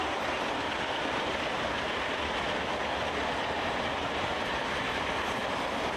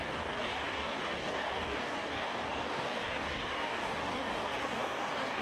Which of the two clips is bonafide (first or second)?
first